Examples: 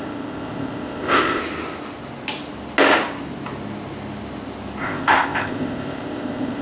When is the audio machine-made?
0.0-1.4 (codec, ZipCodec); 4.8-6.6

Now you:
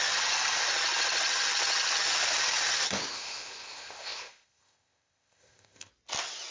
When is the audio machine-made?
3.1-5.9 (codec, ZipCodec)

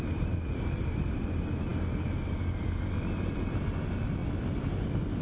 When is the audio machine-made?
none